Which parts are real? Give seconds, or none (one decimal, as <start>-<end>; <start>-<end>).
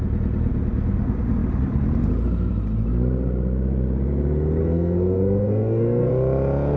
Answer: 0.0-4.6; 6.1-6.8